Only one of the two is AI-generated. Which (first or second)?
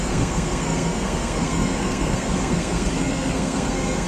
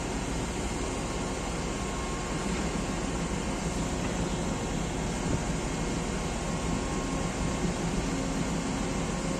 first